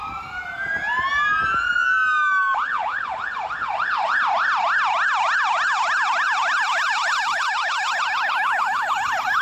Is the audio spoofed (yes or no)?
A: no